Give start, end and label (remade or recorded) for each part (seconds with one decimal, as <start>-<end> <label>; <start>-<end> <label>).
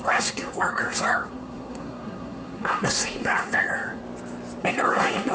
0.0-4.0 remade; 4.0-4.6 recorded; 4.6-5.3 remade